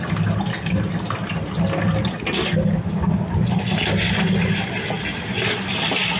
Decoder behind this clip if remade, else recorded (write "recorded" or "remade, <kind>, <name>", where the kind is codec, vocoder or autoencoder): recorded